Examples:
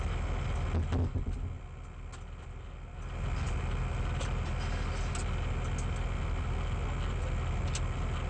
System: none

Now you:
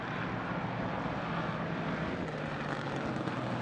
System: none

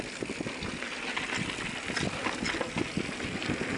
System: none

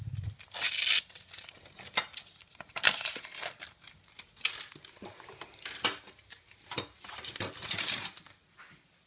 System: none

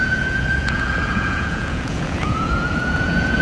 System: vocoder, Vocos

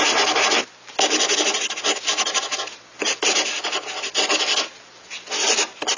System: none